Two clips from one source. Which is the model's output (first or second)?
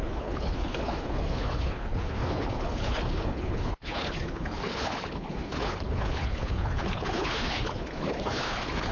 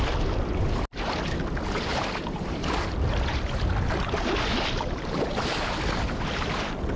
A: first